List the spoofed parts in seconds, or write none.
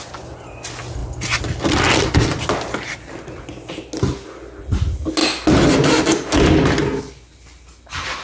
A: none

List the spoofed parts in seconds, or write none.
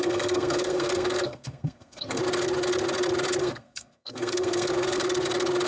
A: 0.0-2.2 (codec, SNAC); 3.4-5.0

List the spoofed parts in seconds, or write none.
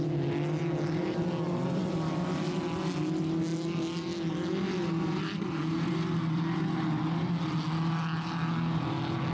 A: none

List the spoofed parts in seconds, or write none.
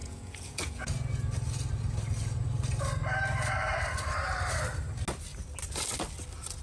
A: 0.0-0.9 (vocoder, Vocos)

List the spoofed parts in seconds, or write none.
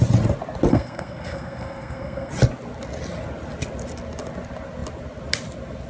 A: 0.7-2.3 (codec, SNAC)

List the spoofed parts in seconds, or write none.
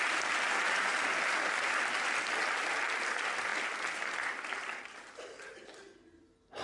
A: none